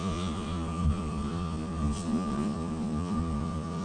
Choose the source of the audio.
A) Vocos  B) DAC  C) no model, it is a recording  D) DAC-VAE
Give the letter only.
A